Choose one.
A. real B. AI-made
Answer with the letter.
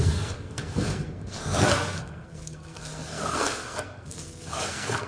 B